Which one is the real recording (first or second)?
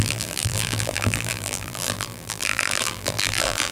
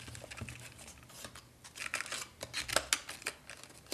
second